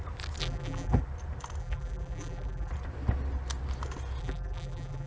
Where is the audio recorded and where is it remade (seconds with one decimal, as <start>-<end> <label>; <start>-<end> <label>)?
0.0-0.4 recorded; 0.4-1.0 remade; 1.0-1.6 recorded; 1.6-2.7 remade; 2.7-4.2 recorded; 4.2-5.1 remade